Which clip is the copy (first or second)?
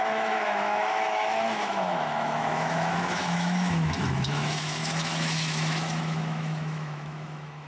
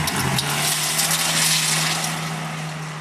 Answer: first